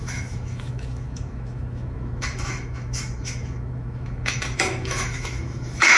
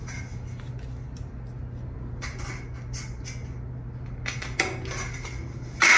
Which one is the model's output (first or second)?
first